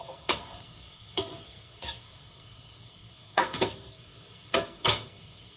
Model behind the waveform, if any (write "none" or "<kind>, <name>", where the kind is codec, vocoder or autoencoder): codec, SNAC